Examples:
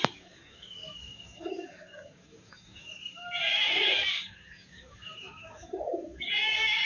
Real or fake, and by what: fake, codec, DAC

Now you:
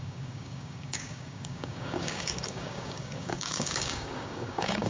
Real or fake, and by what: fake, codec, DAC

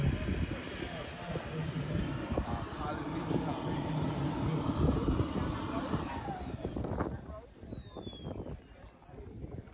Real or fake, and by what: real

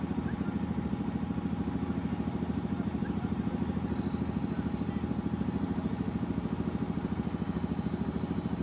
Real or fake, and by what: real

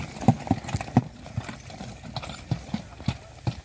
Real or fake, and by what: real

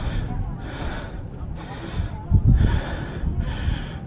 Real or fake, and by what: real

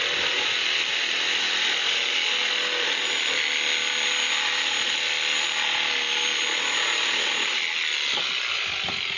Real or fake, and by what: real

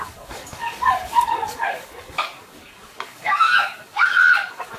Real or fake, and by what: fake, codec, DAC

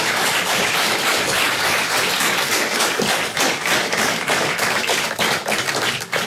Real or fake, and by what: fake, codec, DAC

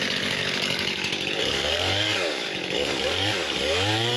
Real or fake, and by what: fake, codec, DAC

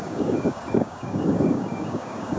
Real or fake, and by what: fake, codec, DAC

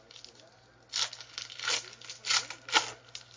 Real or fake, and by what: real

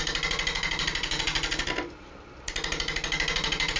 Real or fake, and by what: real